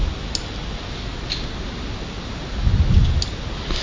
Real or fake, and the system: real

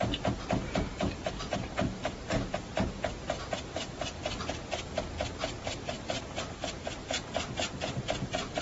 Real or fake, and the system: real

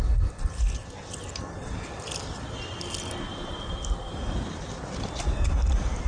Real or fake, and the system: real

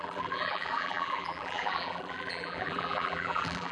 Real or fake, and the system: fake, vocoder, BigVGAN v2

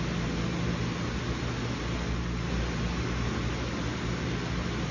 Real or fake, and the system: real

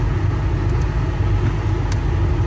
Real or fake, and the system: real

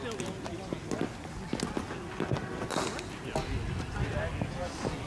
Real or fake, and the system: real